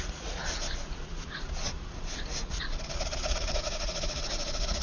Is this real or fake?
fake